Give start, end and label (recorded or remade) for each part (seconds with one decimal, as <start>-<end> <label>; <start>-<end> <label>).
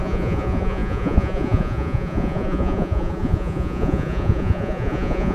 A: 0.0-5.3 remade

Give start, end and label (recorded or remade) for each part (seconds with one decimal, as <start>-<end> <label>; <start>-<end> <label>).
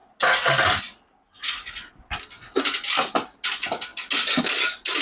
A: 0.0-5.0 recorded